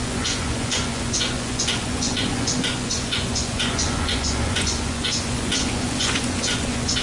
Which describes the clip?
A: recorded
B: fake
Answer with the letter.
B